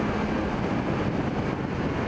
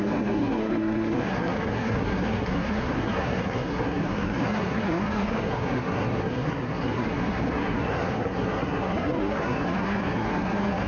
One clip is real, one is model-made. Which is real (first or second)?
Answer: first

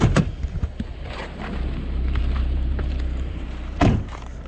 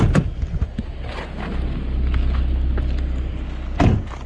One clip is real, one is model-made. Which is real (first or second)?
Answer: second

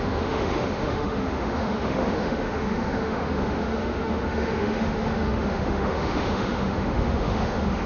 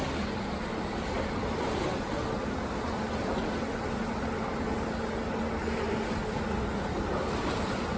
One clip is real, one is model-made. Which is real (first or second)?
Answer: second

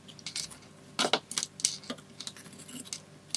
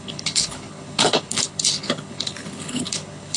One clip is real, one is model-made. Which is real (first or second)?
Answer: first